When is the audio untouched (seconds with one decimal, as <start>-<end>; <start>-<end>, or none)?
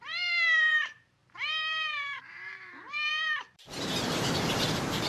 none